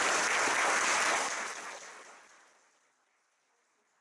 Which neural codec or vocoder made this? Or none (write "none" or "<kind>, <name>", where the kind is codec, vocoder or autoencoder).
none